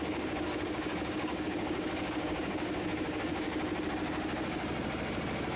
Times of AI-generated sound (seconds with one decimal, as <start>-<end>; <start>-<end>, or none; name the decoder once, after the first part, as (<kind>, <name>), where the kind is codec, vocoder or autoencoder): 0.0-3.5 (codec, DAC)